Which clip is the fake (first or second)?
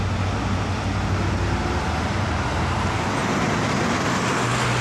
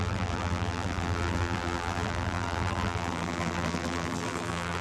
second